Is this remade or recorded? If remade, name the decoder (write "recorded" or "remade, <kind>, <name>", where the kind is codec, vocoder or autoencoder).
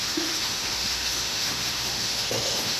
remade, autoencoder, DAC-VAE